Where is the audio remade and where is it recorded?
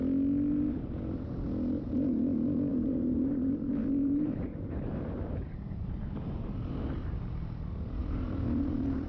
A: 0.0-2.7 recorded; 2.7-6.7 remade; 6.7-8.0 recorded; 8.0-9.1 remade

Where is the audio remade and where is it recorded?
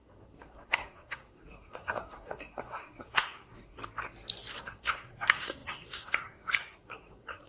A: 0.0-3.8 remade; 3.8-4.6 recorded; 4.6-7.5 remade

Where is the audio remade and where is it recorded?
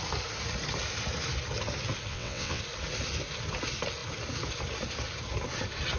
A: 0.0-2.1 recorded; 2.1-2.6 remade; 2.6-6.0 recorded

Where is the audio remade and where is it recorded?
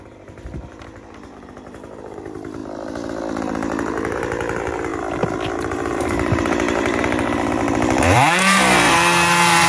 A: 0.0-2.6 remade; 2.6-3.4 recorded; 3.4-9.7 remade